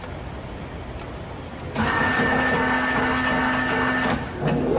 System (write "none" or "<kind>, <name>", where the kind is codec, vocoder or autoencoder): none